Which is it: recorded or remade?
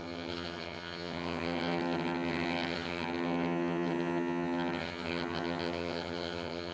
remade